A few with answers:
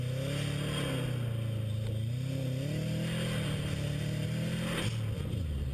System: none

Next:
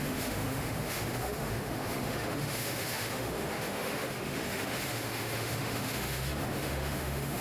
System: autoencoder, DAC-VAE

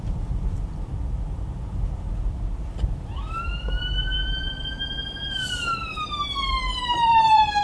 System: vocoder, BigVGAN v2